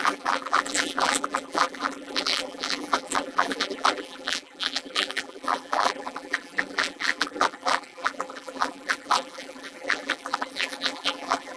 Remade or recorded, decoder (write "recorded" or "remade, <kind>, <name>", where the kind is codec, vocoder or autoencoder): remade, vocoder, BigVGAN v2